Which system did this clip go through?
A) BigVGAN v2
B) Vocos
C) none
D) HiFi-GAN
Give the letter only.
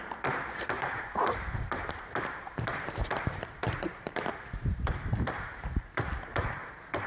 A